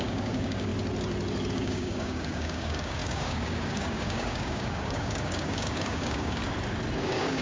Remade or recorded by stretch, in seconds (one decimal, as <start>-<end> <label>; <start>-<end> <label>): 0.0-0.7 remade; 0.7-1.5 recorded; 1.5-6.4 remade; 6.4-7.0 recorded; 7.0-7.4 remade